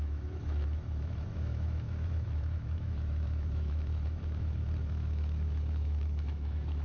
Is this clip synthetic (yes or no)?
yes